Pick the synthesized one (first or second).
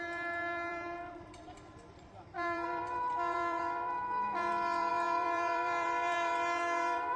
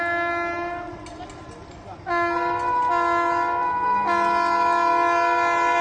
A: first